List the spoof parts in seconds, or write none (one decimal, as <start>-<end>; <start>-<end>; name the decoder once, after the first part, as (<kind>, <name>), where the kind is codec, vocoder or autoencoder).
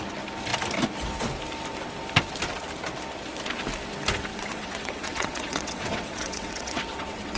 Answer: 4.3-7.4 (vocoder, WaveNeXt)